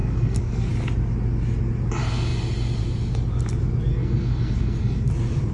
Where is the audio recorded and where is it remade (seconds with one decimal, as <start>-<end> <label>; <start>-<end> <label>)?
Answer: 0.0-0.7 remade; 0.7-3.9 recorded; 3.9-5.1 remade; 5.1-5.5 recorded